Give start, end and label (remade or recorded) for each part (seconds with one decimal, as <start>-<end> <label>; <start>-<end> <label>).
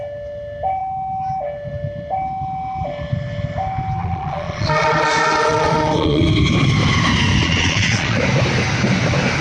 0.0-4.0 recorded; 4.0-6.3 remade; 6.3-7.4 recorded; 7.4-8.2 remade; 8.2-9.4 recorded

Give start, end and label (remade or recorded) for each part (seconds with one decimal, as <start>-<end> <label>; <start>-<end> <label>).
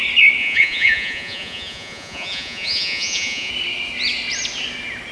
0.0-0.4 recorded; 0.4-3.5 remade; 3.5-5.1 recorded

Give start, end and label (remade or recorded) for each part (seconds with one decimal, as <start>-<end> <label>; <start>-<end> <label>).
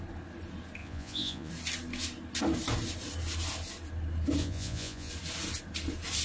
0.0-0.8 recorded; 0.8-1.5 remade; 1.5-4.4 recorded; 4.4-5.1 remade; 5.1-6.2 recorded